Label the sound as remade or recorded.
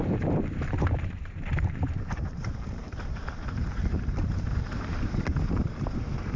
remade